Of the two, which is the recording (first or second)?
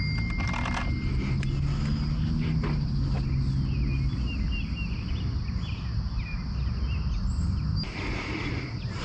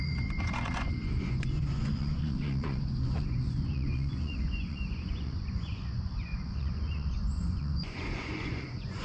first